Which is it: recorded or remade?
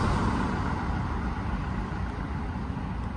recorded